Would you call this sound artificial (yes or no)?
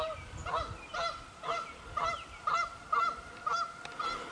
no